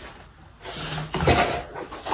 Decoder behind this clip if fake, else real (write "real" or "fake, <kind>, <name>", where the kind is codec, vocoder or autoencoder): real